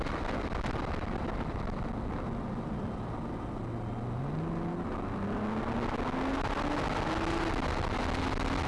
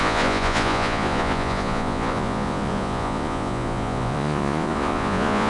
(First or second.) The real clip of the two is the first